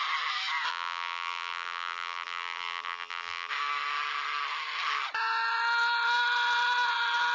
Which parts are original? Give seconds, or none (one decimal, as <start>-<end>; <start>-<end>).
0.0-0.7; 3.5-7.3